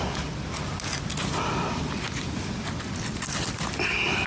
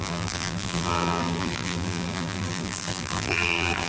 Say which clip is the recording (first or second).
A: first